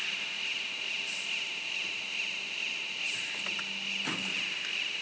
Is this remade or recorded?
recorded